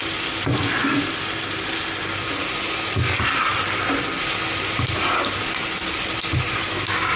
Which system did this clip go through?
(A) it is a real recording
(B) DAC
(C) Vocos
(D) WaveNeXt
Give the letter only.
A